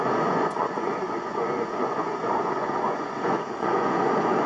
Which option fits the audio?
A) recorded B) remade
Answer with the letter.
B